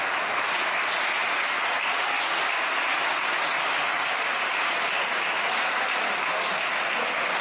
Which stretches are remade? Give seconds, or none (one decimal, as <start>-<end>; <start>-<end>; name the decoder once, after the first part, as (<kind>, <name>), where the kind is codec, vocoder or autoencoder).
none